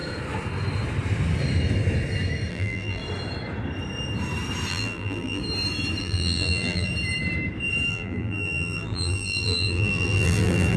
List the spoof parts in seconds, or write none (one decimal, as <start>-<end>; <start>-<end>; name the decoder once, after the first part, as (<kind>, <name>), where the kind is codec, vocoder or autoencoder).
2.5-3.0 (vocoder, BigVGAN v2); 4.7-5.4; 6.0-6.9; 7.9-10.8